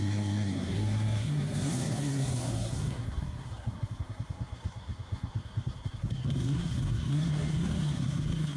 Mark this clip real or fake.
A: fake